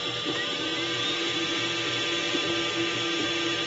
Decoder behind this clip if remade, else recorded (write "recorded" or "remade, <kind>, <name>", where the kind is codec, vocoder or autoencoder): recorded